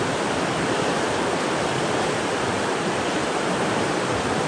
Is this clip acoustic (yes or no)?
yes